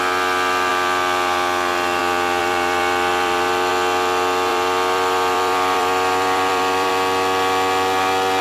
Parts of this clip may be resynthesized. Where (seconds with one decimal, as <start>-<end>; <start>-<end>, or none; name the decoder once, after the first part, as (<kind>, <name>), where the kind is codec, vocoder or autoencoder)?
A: 2.4-3.7 (vocoder, BigVGAN v2); 4.5-6.9